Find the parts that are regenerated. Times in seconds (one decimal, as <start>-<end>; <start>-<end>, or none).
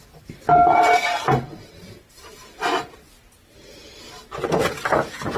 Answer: 1.8-2.7